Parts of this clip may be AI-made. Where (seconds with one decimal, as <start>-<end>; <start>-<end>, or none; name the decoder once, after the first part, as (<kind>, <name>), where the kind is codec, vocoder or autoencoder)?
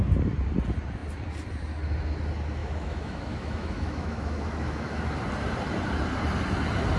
2.6-5.0 (autoencoder, DAC-VAE)